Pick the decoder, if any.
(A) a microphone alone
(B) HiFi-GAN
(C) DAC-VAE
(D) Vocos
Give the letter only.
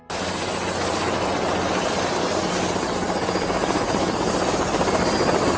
A